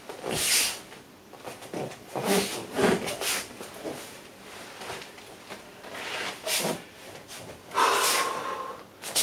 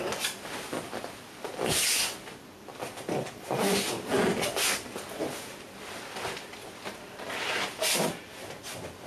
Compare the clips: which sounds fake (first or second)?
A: first